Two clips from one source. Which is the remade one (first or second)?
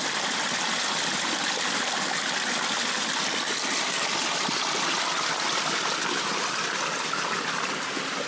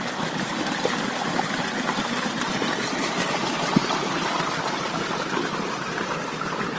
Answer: second